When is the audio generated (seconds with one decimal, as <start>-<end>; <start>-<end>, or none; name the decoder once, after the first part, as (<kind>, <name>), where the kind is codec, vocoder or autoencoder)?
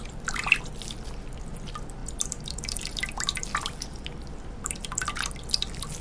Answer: none